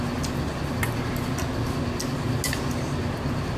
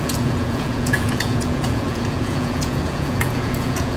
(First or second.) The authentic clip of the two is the first